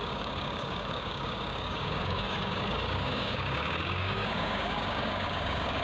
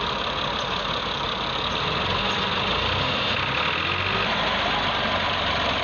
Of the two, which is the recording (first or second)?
second